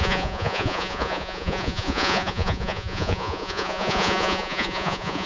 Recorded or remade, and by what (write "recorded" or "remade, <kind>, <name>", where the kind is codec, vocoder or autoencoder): remade, vocoder, Vocos